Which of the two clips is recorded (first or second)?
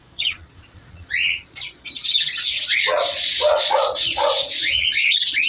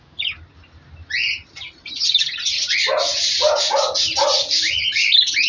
second